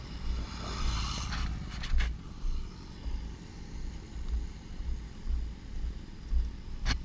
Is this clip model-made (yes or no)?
no